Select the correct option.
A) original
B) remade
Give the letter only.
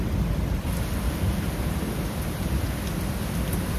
A